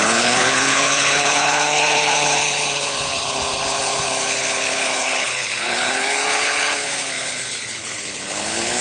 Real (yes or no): no